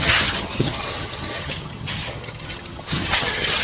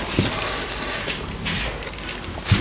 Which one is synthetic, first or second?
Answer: first